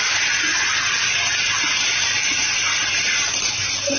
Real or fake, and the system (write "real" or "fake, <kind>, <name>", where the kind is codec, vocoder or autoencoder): real